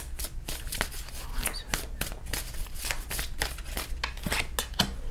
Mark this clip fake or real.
real